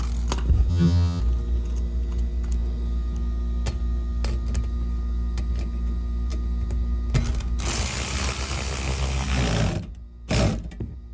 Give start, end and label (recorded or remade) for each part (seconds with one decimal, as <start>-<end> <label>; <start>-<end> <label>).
0.0-0.7 recorded; 0.7-1.2 remade; 1.2-11.1 recorded